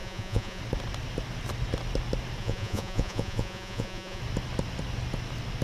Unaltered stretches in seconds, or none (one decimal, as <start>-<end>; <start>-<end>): 0.6-2.4; 4.2-5.6